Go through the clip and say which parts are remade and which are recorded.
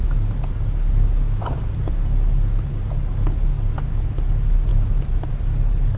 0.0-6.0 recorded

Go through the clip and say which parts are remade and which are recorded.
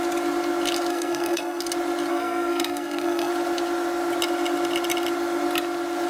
0.0-0.9 recorded; 0.9-1.6 remade; 1.6-2.1 recorded; 2.1-3.3 remade; 3.3-6.1 recorded